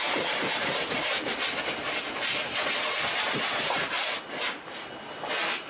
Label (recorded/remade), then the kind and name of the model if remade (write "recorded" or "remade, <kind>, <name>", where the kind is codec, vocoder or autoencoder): recorded